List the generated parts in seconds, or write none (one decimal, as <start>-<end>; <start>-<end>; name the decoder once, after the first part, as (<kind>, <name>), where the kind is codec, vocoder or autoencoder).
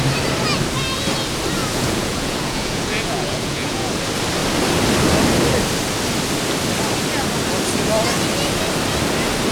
1.6-3.9 (vocoder, Vocos)